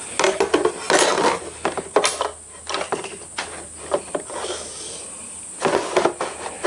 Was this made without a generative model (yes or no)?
yes